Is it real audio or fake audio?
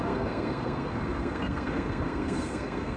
fake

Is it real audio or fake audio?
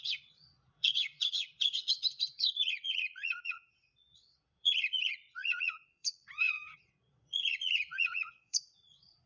fake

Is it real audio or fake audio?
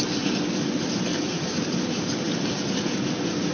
real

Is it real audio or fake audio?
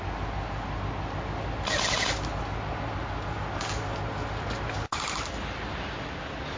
real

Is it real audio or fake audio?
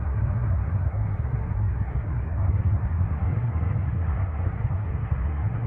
fake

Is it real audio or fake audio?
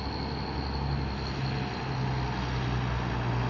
real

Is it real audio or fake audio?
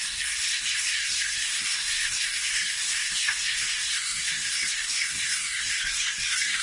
fake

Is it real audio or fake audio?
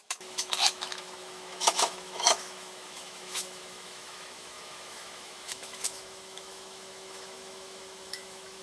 fake